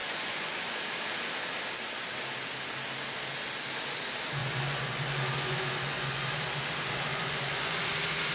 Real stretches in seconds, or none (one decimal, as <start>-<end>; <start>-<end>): 0.8-4.4; 6.3-7.1; 7.8-8.3